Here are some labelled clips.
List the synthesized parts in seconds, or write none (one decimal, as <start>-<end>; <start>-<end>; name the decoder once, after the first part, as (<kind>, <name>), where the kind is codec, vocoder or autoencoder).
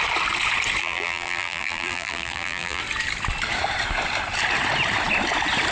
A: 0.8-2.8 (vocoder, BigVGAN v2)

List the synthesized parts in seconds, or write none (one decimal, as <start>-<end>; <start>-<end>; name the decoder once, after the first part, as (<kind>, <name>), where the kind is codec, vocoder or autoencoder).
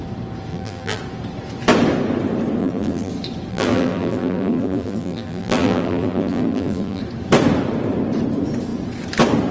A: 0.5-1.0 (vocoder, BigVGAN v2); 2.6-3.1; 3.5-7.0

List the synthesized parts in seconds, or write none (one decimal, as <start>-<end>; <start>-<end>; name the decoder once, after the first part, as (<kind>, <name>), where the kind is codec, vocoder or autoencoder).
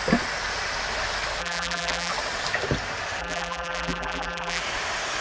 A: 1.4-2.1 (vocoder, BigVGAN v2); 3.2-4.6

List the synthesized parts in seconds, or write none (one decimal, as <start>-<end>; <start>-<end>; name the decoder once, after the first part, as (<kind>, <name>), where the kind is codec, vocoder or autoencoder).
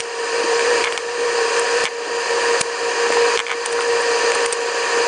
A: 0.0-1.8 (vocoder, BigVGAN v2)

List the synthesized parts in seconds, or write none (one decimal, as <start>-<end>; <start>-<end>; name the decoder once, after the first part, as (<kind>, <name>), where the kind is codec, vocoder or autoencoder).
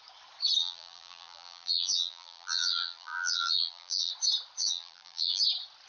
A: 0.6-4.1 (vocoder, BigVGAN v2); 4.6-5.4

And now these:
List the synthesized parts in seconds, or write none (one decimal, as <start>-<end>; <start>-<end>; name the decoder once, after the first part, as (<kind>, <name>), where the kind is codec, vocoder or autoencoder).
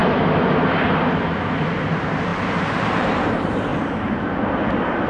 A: 2.3-3.3 (vocoder, BigVGAN v2); 3.7-4.2